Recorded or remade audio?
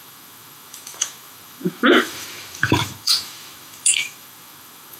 remade